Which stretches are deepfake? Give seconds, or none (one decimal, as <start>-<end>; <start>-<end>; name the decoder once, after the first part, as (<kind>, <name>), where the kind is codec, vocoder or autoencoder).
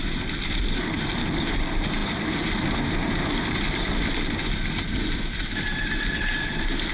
none